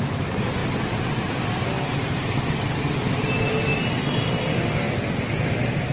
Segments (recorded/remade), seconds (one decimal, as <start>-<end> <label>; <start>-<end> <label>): 0.0-5.9 recorded